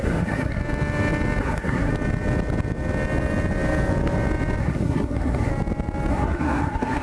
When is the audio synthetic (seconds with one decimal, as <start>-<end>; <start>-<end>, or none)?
0.0-0.6; 1.4-1.9; 4.6-5.5; 6.1-7.0